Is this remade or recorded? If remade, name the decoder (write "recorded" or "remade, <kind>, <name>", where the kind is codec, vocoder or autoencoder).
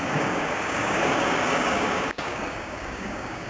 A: remade, codec, DAC